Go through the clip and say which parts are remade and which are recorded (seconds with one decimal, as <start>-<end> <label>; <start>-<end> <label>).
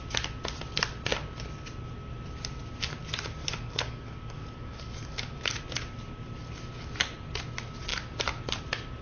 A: 0.0-3.4 recorded; 3.4-5.6 remade; 5.6-9.0 recorded